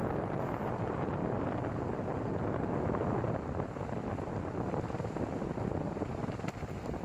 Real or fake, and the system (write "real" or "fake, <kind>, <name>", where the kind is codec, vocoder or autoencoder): real